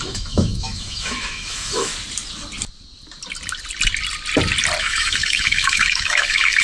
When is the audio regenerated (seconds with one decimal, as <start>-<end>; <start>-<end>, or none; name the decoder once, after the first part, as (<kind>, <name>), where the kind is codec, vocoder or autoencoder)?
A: 0.0-1.9 (autoencoder, DAC-VAE); 4.8-6.6